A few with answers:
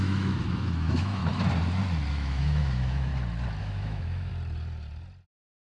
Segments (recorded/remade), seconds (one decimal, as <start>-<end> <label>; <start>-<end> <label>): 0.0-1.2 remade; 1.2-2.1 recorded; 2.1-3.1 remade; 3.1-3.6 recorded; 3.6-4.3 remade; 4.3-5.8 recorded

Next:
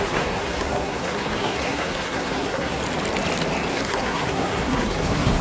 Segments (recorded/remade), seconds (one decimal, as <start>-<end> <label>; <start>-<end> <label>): 0.0-2.8 remade; 2.8-3.7 recorded; 3.7-5.4 remade

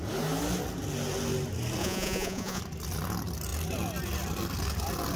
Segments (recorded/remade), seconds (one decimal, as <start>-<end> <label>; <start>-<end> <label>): 0.0-1.8 recorded; 1.8-2.6 remade; 2.6-5.2 recorded